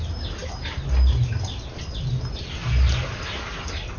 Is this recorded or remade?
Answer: recorded